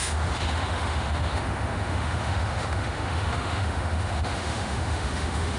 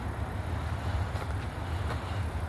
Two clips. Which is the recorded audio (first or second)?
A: second